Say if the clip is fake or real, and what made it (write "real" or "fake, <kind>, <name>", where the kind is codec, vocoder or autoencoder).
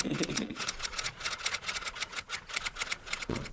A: fake, vocoder, Vocos